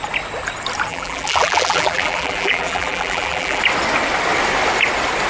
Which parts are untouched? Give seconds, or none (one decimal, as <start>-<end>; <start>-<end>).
0.0-0.9; 3.6-5.3